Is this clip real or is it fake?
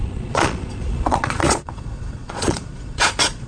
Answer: fake